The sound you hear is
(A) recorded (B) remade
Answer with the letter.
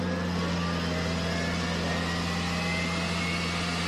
A